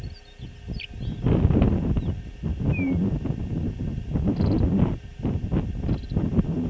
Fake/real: real